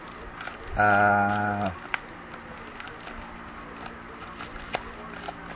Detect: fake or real real